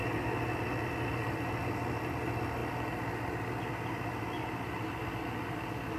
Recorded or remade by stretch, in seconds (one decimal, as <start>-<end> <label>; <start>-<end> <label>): 0.0-6.0 recorded